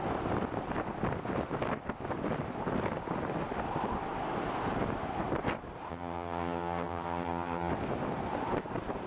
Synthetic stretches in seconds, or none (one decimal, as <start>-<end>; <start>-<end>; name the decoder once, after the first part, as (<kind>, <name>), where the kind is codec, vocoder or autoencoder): 5.9-7.7 (vocoder, HiFi-GAN)

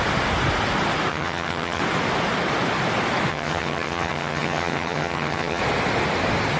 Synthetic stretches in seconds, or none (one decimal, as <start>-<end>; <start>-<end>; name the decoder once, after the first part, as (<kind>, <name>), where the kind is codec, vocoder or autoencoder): 1.1-1.8 (vocoder, HiFi-GAN); 3.3-5.6

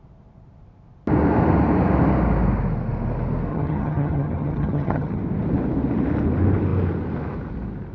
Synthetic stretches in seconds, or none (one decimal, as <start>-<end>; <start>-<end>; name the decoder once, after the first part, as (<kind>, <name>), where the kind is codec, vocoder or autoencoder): 3.5-5.2 (vocoder, HiFi-GAN)

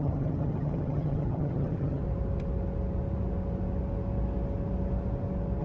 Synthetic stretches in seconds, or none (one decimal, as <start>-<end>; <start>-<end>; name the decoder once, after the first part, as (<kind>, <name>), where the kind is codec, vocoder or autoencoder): 0.0-2.0 (vocoder, HiFi-GAN)

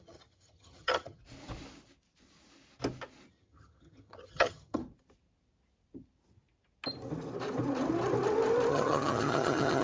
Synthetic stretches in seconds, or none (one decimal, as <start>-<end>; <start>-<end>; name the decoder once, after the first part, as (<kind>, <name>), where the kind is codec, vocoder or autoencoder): 0.0-1.2 (vocoder, HiFi-GAN); 3.3-4.8; 8.7-9.8

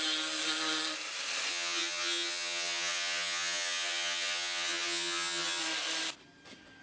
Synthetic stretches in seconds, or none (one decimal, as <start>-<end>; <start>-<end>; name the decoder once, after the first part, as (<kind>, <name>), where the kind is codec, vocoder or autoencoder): 1.5-5.6 (vocoder, HiFi-GAN)

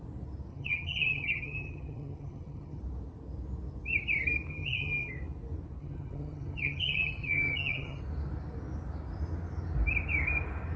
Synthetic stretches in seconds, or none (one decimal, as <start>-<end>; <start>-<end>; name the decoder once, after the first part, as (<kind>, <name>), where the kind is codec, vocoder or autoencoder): 0.5-2.8 (vocoder, HiFi-GAN); 4.5-5.1; 5.8-8.0